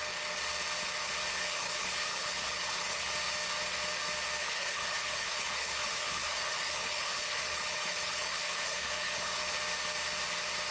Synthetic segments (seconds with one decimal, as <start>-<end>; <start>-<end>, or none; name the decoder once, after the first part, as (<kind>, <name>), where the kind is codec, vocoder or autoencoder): 1.3-3.1 (codec, HILCodec); 4.4-9.4